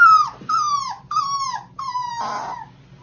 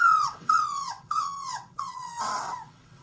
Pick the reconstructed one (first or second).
second